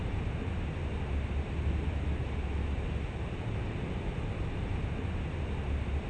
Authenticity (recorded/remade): recorded